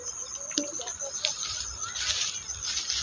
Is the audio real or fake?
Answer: real